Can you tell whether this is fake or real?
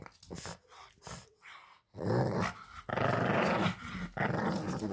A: real